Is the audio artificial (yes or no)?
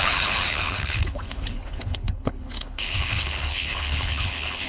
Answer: yes